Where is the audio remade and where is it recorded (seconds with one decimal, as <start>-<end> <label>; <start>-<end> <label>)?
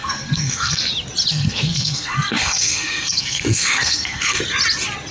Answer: 0.0-0.8 remade; 0.8-1.3 recorded; 1.3-4.4 remade; 4.4-5.1 recorded